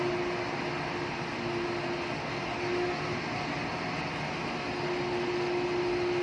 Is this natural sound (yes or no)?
yes